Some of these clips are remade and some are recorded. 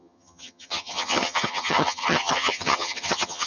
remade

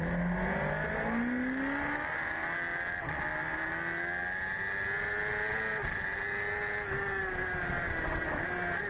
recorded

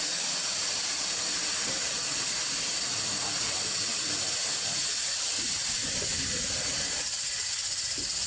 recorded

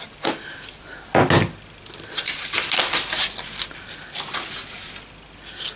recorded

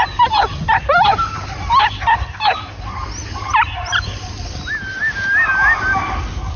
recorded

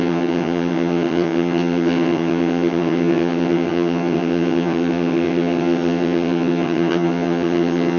remade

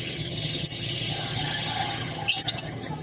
remade